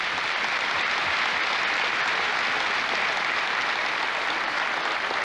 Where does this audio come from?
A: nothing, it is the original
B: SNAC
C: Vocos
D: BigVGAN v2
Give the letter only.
A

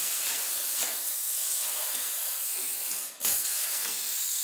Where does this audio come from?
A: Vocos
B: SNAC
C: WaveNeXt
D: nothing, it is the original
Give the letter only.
B